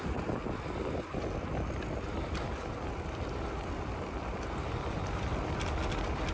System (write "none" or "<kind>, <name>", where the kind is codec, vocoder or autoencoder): none